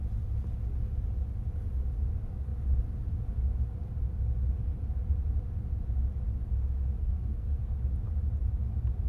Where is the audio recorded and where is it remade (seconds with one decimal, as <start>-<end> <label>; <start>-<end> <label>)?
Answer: 0.0-7.0 recorded; 7.0-7.6 remade; 7.6-9.1 recorded